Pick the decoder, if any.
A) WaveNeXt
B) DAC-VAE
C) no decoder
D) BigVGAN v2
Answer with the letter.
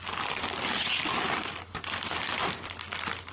C